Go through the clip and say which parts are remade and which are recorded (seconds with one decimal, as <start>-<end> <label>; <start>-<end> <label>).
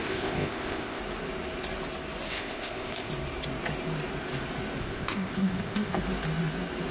0.0-1.0 remade; 1.0-2.3 recorded; 2.3-3.1 remade; 3.1-4.8 recorded; 4.8-6.0 remade; 6.0-6.9 recorded